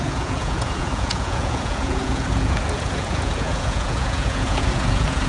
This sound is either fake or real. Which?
fake